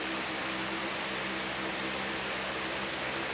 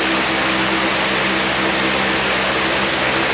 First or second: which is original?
second